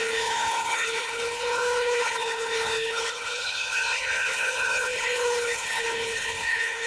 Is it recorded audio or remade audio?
remade